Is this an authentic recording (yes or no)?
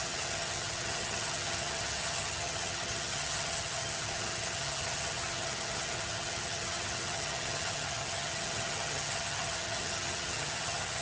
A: no